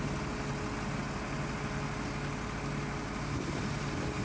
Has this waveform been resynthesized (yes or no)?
no